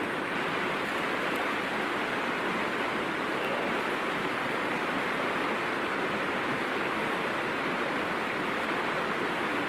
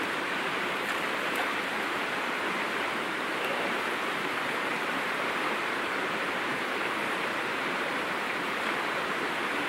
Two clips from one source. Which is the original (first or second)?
first